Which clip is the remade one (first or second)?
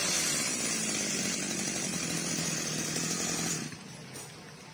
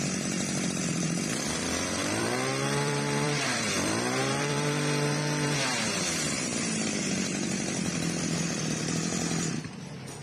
second